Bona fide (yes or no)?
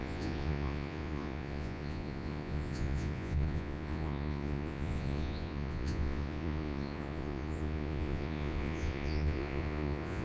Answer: no